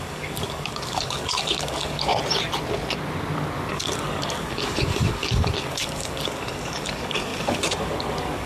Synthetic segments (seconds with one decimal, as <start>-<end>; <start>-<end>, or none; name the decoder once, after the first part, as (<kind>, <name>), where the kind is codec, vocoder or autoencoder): 0.0-2.1 (codec, DAC); 3.7-8.5